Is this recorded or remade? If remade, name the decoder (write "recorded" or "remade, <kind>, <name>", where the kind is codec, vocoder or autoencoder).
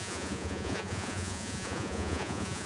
remade, vocoder, Vocos